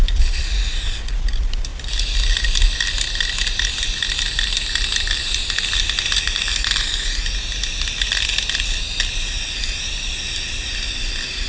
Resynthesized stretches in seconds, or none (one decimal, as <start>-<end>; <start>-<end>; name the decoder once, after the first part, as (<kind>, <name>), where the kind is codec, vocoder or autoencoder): none